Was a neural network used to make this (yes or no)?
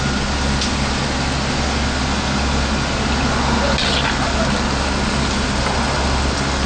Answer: no